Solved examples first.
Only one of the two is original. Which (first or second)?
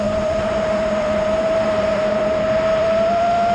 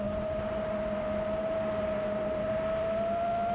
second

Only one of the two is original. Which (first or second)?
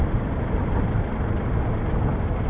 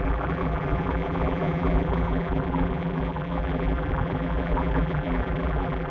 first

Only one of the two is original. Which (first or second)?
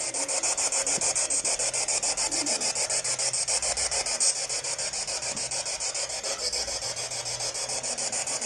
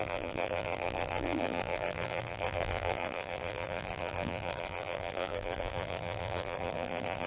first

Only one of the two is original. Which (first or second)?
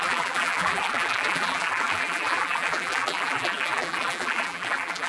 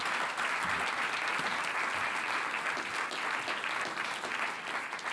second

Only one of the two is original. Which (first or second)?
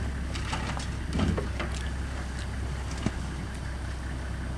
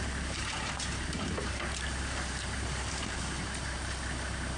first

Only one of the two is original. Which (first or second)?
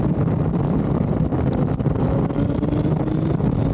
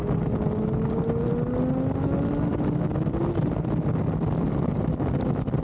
second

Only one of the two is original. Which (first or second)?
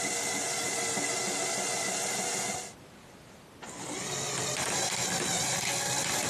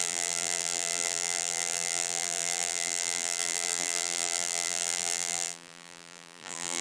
first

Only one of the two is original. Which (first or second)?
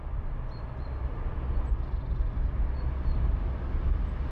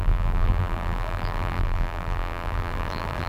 first